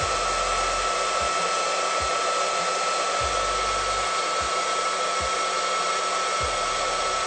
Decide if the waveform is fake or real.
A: real